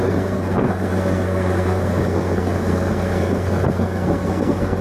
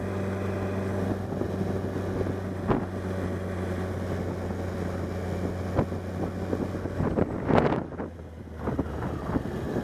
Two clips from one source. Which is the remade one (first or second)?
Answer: first